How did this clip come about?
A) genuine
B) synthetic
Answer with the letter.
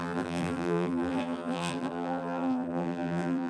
B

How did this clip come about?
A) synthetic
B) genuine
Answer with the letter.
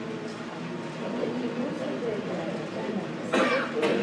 A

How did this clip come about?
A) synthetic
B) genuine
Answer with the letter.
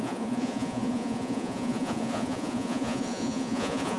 A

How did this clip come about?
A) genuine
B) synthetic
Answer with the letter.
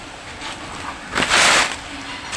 A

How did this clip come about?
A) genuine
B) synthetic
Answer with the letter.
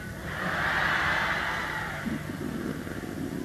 A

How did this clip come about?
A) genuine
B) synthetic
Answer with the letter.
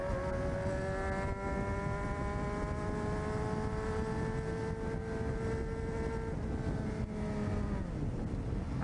A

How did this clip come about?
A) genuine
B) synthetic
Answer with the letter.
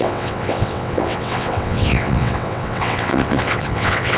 B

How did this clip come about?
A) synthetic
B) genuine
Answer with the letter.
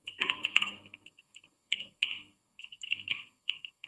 A